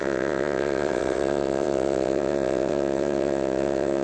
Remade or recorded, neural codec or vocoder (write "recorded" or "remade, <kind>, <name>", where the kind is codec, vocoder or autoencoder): remade, vocoder, WaveNeXt